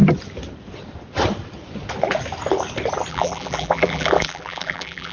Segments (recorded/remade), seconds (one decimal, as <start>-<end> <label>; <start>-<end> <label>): 0.0-3.1 recorded; 3.1-5.1 remade